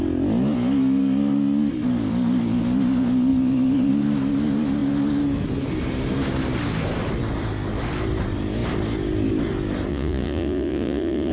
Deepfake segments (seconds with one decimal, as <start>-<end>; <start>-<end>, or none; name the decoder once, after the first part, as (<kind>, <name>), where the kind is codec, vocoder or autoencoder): 9.9-11.3 (vocoder, Vocos)